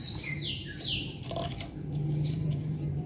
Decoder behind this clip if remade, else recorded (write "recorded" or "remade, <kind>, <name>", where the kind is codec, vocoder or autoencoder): remade, vocoder, BigVGAN v2